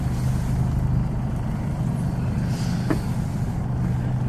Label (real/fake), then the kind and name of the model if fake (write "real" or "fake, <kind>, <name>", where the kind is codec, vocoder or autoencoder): real